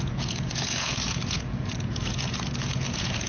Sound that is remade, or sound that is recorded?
remade